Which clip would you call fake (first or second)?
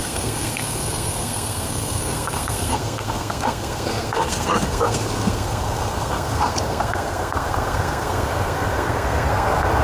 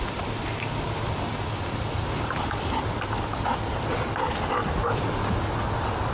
first